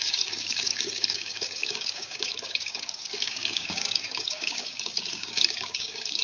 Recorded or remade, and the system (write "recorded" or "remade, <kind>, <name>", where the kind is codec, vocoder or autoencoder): remade, codec, DAC